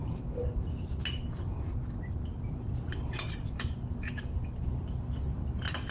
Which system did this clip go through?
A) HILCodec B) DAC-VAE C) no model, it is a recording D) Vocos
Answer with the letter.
C